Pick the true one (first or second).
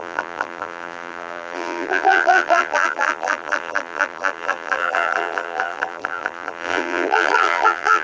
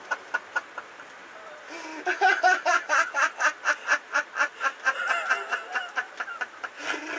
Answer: second